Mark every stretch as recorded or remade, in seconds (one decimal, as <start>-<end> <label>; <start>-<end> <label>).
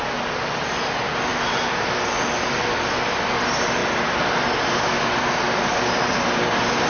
0.0-6.9 recorded